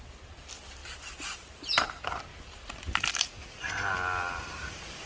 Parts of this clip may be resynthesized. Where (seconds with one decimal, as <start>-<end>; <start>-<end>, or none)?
none